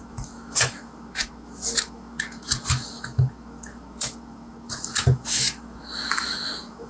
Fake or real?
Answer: fake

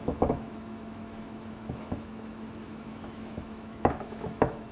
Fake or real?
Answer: fake